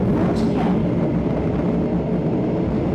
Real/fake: real